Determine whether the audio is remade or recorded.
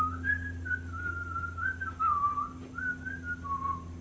recorded